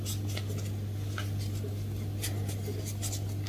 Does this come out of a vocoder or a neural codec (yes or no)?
no